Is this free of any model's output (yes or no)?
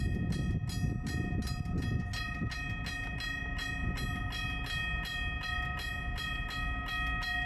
yes